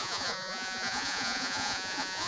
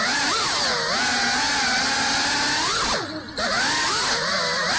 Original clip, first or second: second